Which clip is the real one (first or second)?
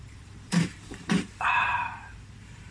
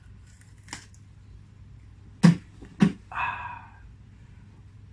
second